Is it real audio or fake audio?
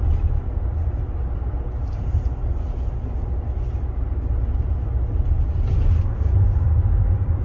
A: real